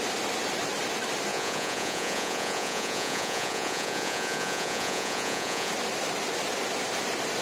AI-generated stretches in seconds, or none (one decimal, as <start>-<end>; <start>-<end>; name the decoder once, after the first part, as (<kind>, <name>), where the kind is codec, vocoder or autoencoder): 1.3-5.7 (vocoder, Vocos)